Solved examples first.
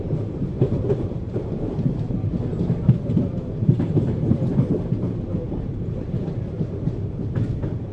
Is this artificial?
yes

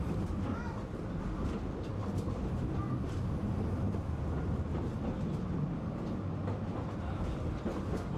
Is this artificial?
no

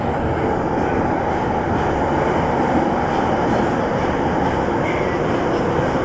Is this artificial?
no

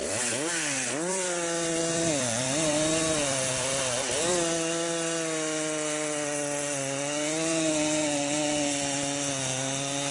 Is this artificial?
yes